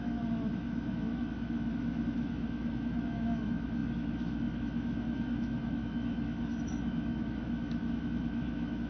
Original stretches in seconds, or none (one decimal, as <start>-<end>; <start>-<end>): none